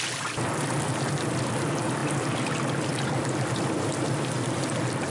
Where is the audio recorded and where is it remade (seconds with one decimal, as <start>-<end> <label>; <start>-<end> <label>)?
0.0-5.1 recorded